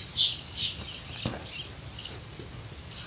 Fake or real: real